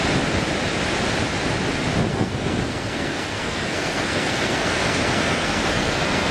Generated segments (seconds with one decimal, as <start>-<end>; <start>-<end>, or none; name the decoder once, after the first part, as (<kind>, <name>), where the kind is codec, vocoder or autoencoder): 2.1-6.3 (codec, SNAC)